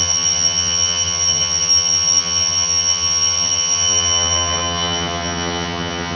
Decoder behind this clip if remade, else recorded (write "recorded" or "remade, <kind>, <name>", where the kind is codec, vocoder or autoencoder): remade, vocoder, HiFi-GAN